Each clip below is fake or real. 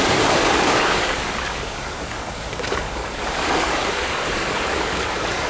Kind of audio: fake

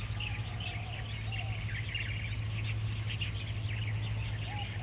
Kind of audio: real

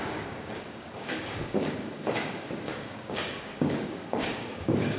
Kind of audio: fake